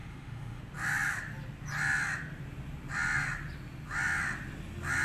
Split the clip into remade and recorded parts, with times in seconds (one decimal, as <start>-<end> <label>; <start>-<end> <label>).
0.0-0.6 remade; 0.6-5.0 recorded